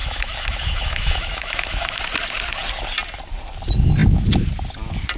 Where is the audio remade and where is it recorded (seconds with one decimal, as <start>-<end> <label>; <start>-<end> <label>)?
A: 0.0-2.0 remade; 2.0-5.2 recorded